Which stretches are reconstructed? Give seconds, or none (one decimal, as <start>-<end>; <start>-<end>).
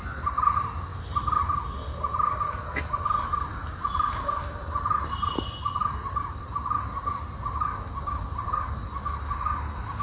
none